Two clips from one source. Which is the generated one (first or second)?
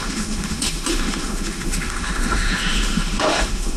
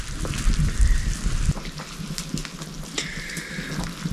first